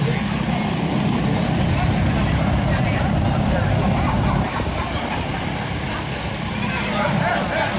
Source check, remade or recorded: recorded